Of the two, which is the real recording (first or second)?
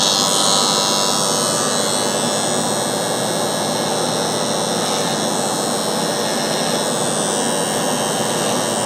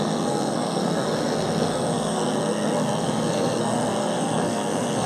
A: first